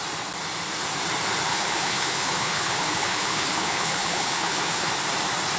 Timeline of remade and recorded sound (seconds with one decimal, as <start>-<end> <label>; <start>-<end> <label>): 0.0-1.5 recorded; 1.5-4.9 remade; 4.9-5.6 recorded